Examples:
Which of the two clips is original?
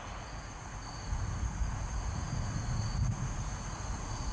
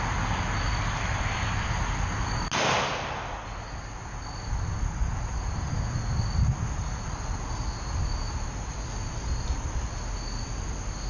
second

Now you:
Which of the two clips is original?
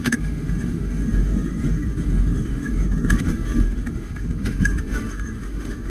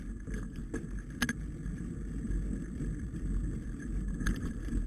second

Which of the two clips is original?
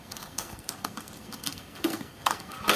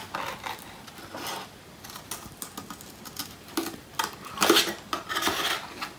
second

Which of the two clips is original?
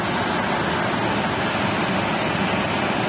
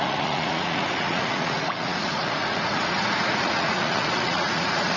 first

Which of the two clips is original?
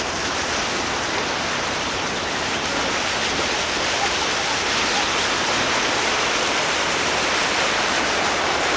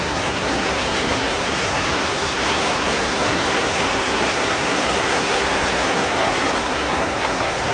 first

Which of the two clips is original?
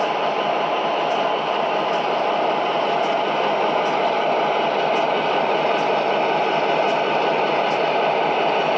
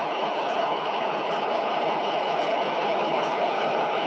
first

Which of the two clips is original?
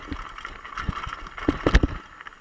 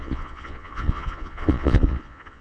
first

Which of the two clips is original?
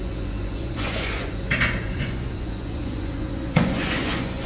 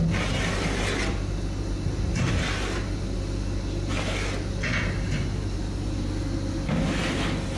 second